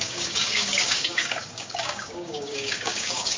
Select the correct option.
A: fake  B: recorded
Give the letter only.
A